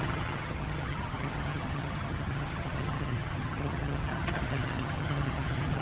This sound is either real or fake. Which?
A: fake